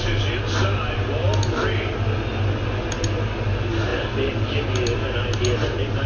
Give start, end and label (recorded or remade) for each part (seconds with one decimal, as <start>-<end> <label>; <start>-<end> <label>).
0.0-6.1 recorded